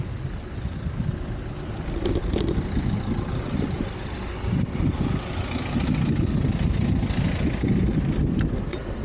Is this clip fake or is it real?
real